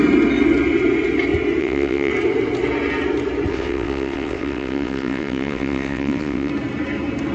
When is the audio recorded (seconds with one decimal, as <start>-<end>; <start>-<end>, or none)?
0.0-1.6; 2.1-3.5; 6.5-7.3